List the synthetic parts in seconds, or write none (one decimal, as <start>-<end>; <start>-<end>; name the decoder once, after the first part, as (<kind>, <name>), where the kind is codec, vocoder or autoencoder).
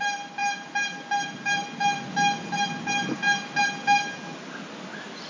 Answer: none